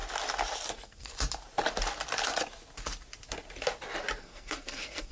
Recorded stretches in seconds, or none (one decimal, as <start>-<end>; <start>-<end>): 0.0-0.7; 1.1-4.2